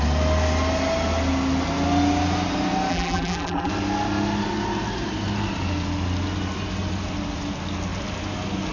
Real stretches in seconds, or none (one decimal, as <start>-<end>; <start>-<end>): 0.0-2.9; 3.7-8.7